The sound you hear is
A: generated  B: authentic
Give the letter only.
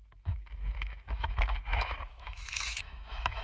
A